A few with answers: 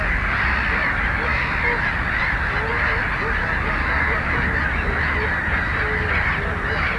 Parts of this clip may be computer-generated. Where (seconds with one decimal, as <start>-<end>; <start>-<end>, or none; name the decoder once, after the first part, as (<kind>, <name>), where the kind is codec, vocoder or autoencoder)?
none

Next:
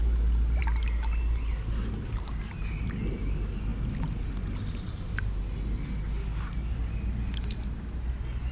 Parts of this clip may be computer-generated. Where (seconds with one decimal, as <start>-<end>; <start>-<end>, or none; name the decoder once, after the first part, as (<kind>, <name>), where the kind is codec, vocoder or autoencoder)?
none

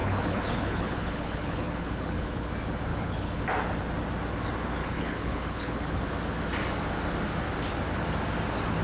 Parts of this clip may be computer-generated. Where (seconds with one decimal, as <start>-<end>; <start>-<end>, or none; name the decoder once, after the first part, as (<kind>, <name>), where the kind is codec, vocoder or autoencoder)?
0.0-2.5 (codec, HILCodec); 2.9-3.4; 4.8-6.0

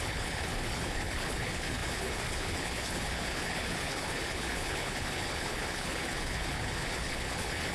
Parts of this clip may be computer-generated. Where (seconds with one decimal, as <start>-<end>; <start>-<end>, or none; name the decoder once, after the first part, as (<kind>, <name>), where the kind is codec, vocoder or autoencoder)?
0.0-7.7 (codec, HILCodec)

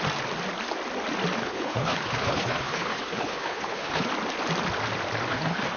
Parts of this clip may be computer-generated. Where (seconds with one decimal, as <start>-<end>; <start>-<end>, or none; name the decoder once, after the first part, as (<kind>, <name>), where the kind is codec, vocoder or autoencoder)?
1.4-4.1 (codec, HILCodec); 5.3-5.8

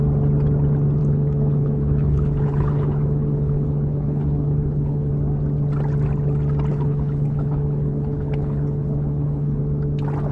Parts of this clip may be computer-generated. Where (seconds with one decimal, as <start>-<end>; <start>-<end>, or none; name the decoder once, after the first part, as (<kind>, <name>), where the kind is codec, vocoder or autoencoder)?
1.0-5.1 (codec, HILCodec); 6.7-9.6